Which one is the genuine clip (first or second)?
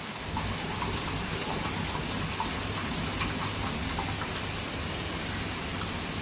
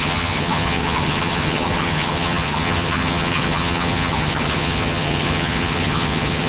first